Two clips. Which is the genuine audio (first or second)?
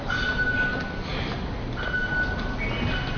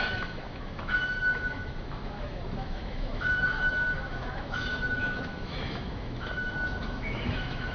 first